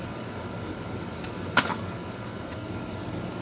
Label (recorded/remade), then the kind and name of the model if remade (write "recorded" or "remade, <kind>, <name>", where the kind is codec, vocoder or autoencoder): remade, codec, DAC